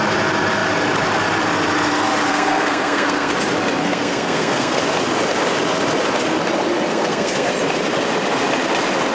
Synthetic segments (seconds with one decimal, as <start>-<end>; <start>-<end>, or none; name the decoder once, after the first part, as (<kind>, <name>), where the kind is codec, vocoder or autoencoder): 2.3-3.3 (codec, SNAC); 3.8-4.8; 6.9-7.5